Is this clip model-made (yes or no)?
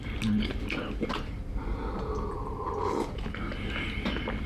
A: no